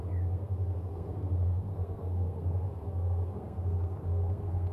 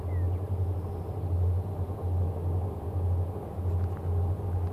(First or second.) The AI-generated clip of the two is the first